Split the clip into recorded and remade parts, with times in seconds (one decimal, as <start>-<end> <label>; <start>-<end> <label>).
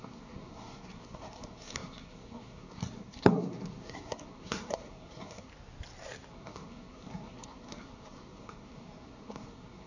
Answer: 0.0-5.5 remade; 5.5-6.3 recorded; 6.3-9.9 remade